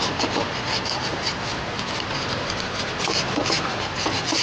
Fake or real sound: real